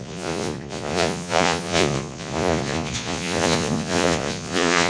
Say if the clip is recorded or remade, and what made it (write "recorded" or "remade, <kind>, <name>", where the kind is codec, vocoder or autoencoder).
remade, vocoder, Vocos